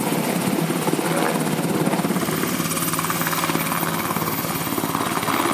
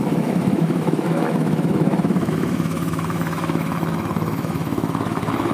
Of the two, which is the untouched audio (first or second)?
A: first